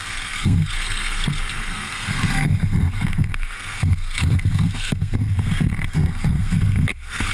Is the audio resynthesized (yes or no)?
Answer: yes